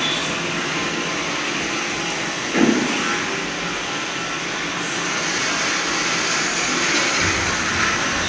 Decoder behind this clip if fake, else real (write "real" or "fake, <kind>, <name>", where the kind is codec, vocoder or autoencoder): real